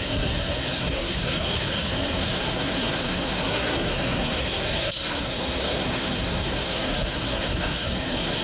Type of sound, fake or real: fake